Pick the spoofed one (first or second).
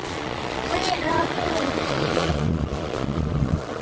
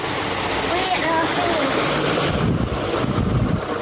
first